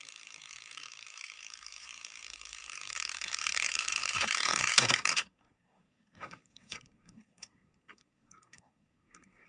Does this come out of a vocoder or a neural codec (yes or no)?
yes